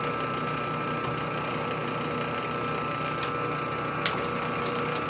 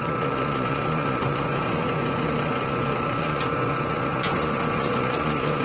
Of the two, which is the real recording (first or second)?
first